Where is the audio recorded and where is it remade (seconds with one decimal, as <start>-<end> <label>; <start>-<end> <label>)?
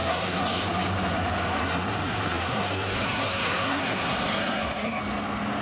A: 0.0-0.6 remade; 0.6-1.6 recorded; 1.6-5.0 remade; 5.0-5.6 recorded